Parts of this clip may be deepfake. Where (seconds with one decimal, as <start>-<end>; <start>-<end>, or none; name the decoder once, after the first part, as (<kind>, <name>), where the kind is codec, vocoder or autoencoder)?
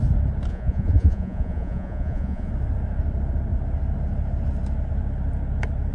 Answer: 0.5-2.5 (vocoder, Vocos)